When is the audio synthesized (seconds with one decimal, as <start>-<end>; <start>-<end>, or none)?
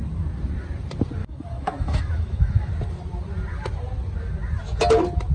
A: 1.2-2.7